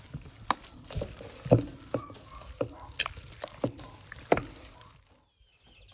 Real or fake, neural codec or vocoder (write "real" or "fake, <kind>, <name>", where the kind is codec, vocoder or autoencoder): real